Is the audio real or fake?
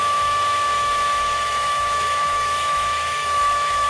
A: fake